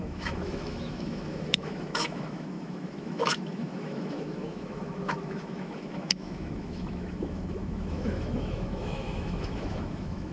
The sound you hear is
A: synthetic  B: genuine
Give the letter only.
A